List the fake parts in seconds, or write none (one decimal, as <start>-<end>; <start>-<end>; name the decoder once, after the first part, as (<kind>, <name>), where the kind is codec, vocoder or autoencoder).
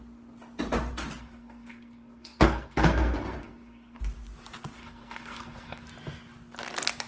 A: 1.2-4.0 (codec, SNAC); 4.8-5.8